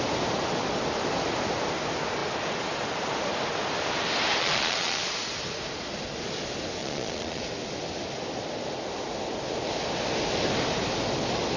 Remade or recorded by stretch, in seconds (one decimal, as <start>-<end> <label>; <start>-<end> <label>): 0.0-4.4 recorded; 4.4-5.1 remade; 5.1-6.8 recorded; 6.8-7.4 remade; 7.4-11.6 recorded